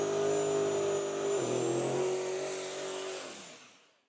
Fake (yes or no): no